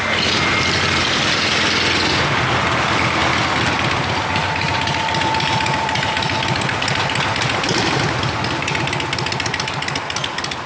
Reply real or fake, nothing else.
real